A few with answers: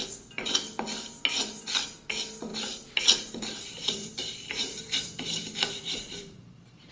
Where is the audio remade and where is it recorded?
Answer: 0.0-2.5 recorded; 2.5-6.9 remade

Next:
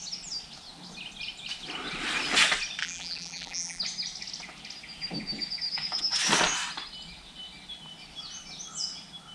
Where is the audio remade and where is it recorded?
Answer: 0.0-2.8 recorded; 2.8-3.8 remade; 3.8-9.3 recorded

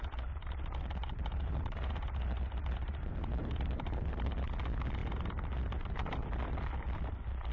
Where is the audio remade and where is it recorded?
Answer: 0.0-0.4 recorded; 0.4-4.3 remade; 4.3-5.0 recorded; 5.0-5.9 remade; 5.9-7.5 recorded

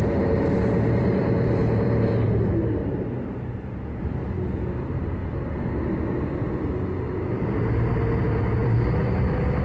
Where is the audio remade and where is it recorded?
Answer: 0.0-2.8 remade; 2.8-3.6 recorded; 3.6-4.2 remade; 4.2-4.8 recorded; 4.8-5.2 remade; 5.2-8.2 recorded; 8.2-9.6 remade

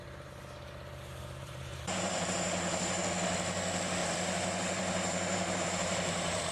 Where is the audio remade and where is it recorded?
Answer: 0.0-1.2 recorded; 1.2-3.0 remade; 3.0-4.0 recorded; 4.0-6.5 remade